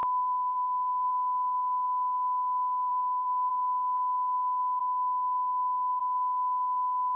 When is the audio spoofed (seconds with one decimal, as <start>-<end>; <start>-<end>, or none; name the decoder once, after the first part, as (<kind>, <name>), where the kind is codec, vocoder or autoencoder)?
0.0-1.1 (codec, SNAC); 2.9-3.5